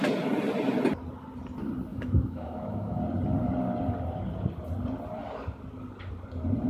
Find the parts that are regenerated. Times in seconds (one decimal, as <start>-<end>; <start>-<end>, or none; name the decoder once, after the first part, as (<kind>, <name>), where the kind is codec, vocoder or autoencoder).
1.9-3.0 (autoencoder, DAC-VAE)